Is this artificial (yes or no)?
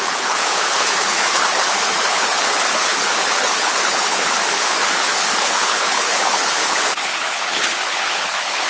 yes